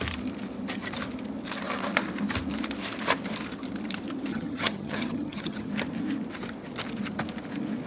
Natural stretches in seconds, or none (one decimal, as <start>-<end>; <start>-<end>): 0.0-4.3; 5.7-7.9